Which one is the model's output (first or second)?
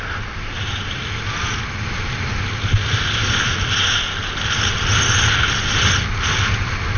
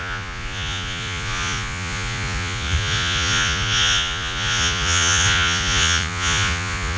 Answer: second